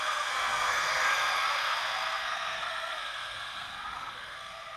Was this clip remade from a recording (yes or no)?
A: yes